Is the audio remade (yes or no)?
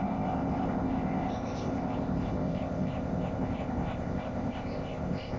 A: yes